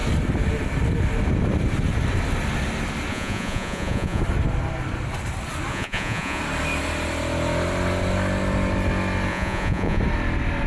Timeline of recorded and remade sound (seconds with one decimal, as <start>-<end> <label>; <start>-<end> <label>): 0.0-3.1 recorded; 3.1-4.2 remade; 4.2-5.7 recorded; 5.7-6.4 remade; 6.4-9.3 recorded; 9.3-10.0 remade; 10.0-10.7 recorded

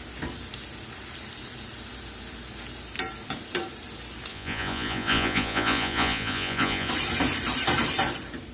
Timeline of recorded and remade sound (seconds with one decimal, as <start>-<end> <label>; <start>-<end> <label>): 0.0-4.3 recorded; 4.3-6.9 remade; 6.9-8.5 recorded

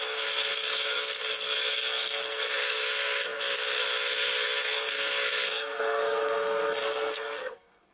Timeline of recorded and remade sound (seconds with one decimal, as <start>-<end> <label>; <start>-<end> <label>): 0.0-7.9 remade

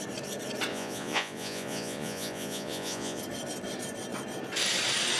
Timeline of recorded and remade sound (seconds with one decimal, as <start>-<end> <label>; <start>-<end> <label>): 0.0-0.7 recorded; 0.7-3.2 remade; 3.2-5.2 recorded